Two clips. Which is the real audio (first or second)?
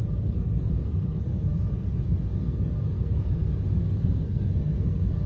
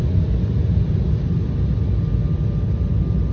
second